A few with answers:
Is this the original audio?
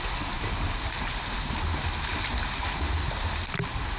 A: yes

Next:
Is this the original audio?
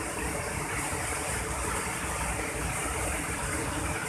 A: yes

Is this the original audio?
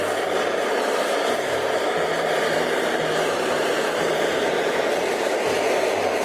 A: no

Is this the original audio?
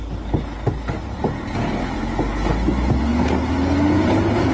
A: yes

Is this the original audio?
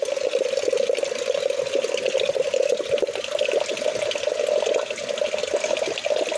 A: yes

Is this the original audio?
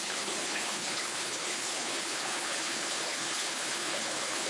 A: no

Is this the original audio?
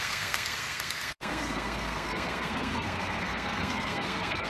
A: no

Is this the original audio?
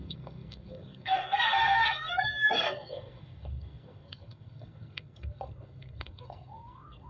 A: no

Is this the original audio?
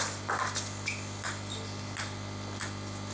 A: yes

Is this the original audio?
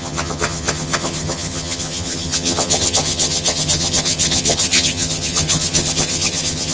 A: no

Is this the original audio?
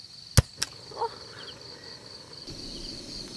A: yes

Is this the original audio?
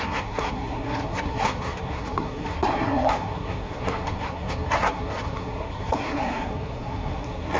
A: no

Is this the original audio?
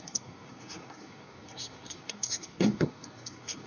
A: no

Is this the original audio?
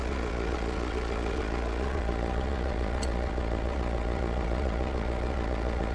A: no